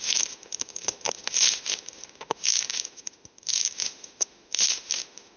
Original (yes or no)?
no